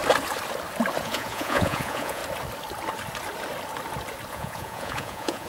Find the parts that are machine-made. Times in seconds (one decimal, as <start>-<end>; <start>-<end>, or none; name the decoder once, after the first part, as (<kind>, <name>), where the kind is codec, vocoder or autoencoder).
1.0-2.2 (vocoder, Vocos); 4.3-5.5